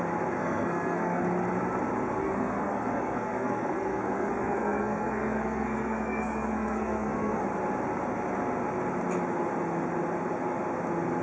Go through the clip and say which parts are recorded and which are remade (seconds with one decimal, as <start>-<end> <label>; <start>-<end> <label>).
0.0-0.4 recorded; 0.4-1.2 remade; 1.2-2.2 recorded; 2.2-7.4 remade; 7.4-11.2 recorded